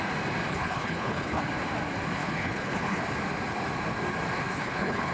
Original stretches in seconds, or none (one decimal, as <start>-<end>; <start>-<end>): 0.0-0.5; 1.4-2.2; 3.0-4.5